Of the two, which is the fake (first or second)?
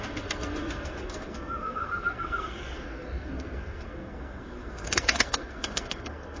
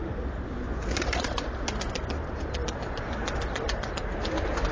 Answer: first